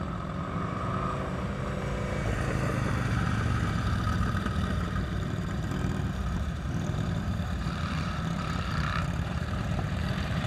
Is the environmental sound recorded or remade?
remade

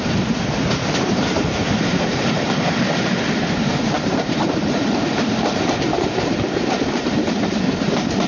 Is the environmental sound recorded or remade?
remade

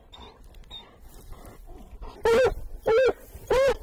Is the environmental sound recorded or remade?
remade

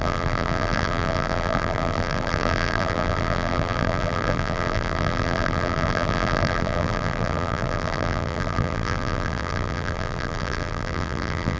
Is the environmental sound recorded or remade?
remade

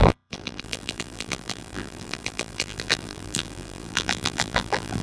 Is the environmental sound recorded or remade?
remade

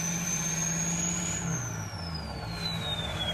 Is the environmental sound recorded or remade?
recorded